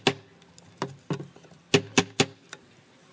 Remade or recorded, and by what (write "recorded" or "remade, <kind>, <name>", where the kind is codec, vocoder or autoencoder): recorded